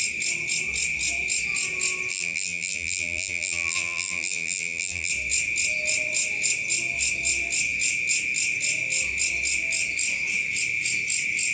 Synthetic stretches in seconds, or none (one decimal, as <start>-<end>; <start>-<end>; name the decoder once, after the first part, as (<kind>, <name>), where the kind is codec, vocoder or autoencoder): 2.1-5.1 (vocoder, BigVGAN v2)

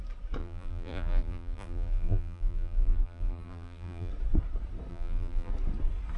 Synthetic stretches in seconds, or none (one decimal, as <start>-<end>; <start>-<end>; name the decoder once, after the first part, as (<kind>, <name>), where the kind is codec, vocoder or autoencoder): 0.4-4.1 (vocoder, BigVGAN v2); 4.9-5.5

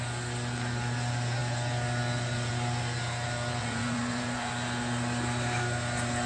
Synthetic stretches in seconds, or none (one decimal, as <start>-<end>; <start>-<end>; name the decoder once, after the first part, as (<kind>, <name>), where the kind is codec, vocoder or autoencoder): 3.6-4.5 (vocoder, Vocos)